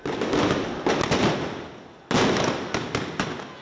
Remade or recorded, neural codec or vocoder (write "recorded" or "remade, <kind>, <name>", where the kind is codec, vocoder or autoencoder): recorded